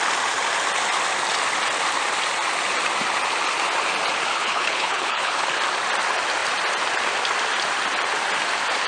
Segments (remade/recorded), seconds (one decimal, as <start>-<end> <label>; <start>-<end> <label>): 0.0-4.3 recorded; 4.3-5.5 remade; 5.5-8.9 recorded